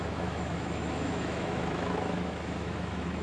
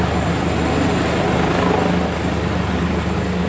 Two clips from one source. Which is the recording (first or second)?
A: second